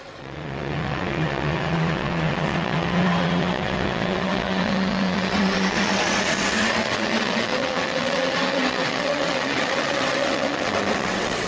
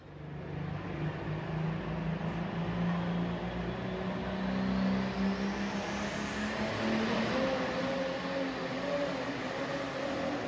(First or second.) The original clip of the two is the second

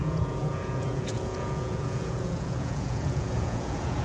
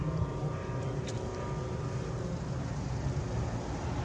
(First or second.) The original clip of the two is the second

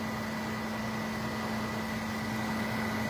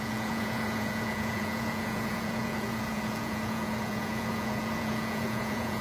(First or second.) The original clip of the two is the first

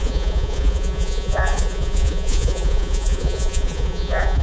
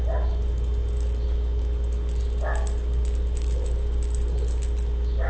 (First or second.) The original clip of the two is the second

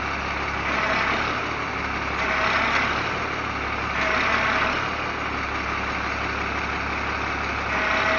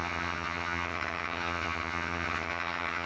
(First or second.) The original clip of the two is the first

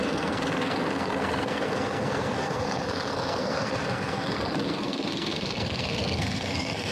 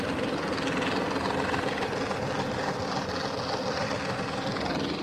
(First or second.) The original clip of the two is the second